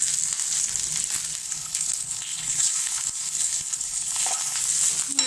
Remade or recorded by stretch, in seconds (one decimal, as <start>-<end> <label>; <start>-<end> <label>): 0.0-1.4 recorded; 1.4-4.6 remade; 4.6-5.3 recorded